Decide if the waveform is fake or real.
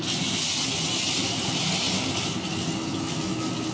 real